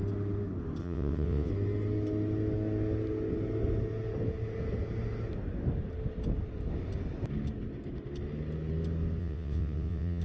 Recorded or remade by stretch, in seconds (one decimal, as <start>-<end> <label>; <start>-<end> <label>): 0.0-0.8 recorded; 0.8-1.5 remade; 1.5-9.2 recorded; 9.2-10.2 remade